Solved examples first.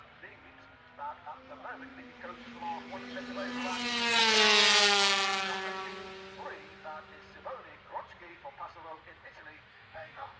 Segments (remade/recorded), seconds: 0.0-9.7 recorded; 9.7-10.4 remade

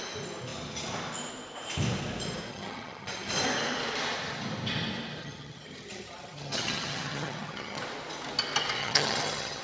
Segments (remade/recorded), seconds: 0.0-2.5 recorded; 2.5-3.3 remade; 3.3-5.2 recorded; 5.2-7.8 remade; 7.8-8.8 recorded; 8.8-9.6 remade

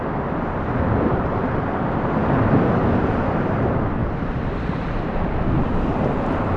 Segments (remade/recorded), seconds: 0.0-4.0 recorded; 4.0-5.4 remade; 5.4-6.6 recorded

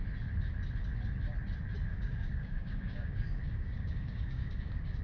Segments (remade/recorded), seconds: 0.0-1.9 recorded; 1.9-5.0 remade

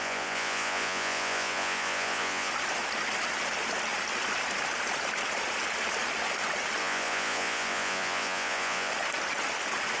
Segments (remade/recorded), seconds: 0.0-2.5 remade; 2.5-6.8 recorded; 6.8-8.9 remade; 8.9-10.0 recorded